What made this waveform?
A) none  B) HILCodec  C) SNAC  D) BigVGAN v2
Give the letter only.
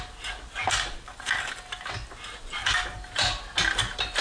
A